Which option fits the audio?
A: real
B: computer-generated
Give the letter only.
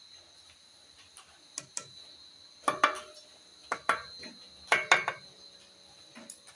A